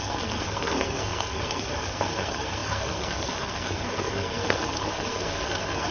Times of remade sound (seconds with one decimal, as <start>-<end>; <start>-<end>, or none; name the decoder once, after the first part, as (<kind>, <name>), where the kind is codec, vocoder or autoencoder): 0.0-5.9 (codec, SNAC)